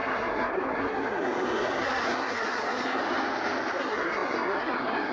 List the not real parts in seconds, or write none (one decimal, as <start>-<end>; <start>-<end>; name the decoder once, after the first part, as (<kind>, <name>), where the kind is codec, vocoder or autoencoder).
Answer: 0.0-3.0 (codec, SNAC); 3.8-5.1